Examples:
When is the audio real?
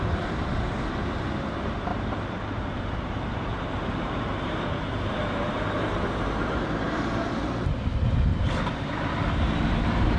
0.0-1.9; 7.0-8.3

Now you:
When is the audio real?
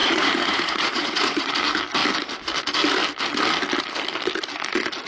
1.5-5.1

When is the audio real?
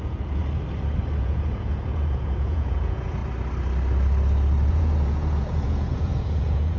0.4-1.2; 3.2-4.7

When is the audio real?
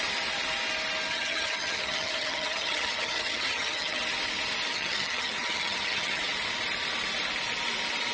0.0-1.1; 4.0-4.7; 6.2-8.1